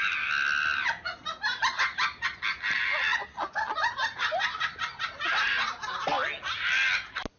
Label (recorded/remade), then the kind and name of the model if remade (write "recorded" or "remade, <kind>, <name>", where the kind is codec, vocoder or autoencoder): recorded